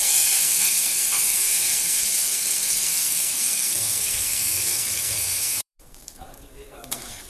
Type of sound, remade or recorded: remade